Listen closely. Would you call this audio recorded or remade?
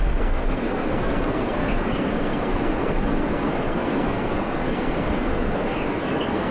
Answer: remade